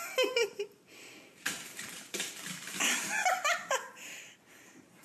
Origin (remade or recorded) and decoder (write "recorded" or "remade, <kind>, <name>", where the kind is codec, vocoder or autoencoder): remade, vocoder, BigVGAN v2